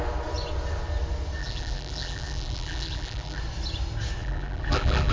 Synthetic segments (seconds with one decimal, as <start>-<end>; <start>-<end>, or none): 1.4-3.4; 4.2-5.1